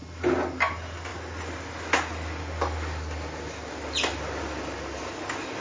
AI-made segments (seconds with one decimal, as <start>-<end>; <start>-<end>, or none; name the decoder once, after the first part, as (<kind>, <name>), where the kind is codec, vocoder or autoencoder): none